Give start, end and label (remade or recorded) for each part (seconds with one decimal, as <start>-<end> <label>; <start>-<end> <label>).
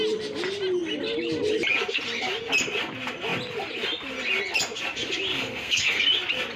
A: 0.0-5.3 recorded; 5.3-6.0 remade; 6.0-6.6 recorded